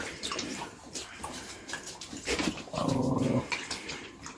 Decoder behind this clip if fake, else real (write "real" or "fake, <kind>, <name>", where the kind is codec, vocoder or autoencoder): fake, vocoder, BigVGAN v2